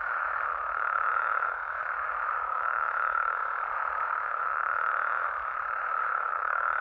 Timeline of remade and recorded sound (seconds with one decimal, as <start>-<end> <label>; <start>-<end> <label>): 0.0-6.8 remade